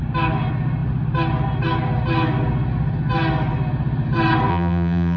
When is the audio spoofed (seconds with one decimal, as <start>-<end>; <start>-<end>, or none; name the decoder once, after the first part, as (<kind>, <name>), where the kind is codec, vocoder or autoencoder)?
4.5-5.2 (vocoder, BigVGAN v2)